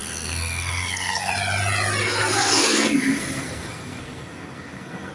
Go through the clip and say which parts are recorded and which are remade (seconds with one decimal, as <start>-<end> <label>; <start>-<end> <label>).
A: 0.0-1.3 remade; 1.3-2.0 recorded; 2.0-5.1 remade